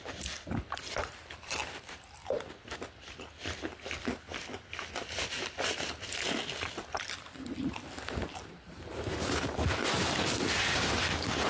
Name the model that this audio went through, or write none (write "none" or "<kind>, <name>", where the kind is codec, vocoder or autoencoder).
vocoder, BigVGAN v2